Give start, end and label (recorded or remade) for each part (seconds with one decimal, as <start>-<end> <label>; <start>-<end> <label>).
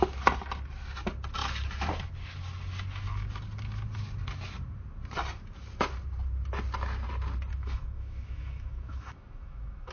0.0-7.5 recorded; 7.5-9.9 remade